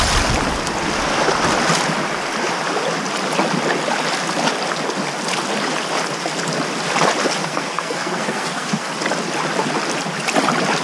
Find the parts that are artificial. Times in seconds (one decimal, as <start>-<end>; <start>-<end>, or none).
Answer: 7.4-8.9